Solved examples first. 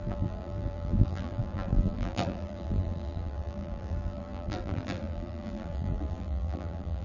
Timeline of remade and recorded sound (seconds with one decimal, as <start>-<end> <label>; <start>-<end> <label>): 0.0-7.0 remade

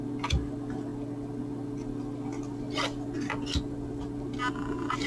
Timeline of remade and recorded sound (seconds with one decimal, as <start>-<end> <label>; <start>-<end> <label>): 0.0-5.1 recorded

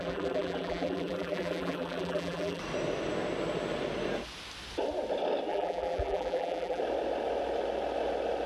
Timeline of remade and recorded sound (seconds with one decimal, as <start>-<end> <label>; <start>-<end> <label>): 0.0-2.6 remade; 2.6-5.5 recorded; 5.5-6.8 remade; 6.8-8.5 recorded

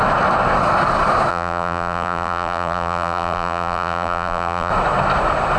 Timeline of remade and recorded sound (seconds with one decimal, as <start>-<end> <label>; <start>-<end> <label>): 0.0-1.3 recorded; 1.3-4.7 remade; 4.7-5.6 recorded

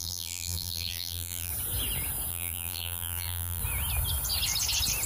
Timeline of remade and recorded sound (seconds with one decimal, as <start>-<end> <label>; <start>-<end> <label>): 0.0-1.5 remade; 1.5-2.3 recorded; 2.3-3.6 remade; 3.6-5.1 recorded

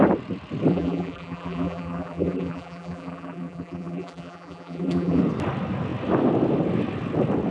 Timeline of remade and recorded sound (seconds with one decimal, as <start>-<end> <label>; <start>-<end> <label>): 0.0-0.7 recorded; 0.7-5.2 remade; 5.2-7.5 recorded